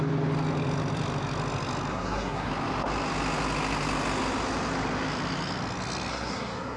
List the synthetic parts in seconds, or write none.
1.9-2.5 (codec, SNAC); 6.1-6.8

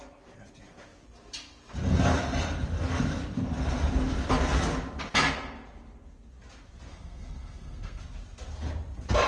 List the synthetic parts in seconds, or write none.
6.9-8.0 (codec, SNAC)

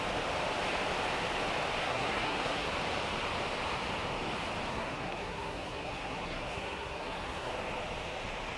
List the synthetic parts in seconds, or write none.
1.8-2.7 (codec, SNAC); 4.7-7.5

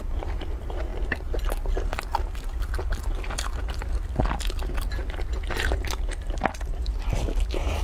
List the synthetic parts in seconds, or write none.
5.0-5.9 (vocoder, BigVGAN v2)

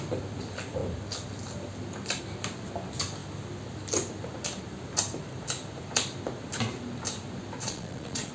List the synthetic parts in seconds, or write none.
7.6-8.3 (vocoder, Vocos)